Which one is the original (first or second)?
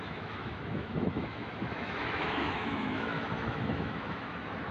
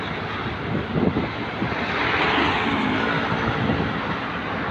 second